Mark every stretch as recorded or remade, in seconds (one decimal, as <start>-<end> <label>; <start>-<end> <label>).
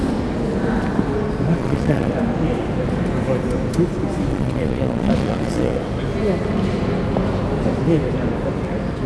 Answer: 0.0-1.6 recorded; 1.6-2.1 remade; 2.1-4.3 recorded; 4.3-5.8 remade; 5.8-9.1 recorded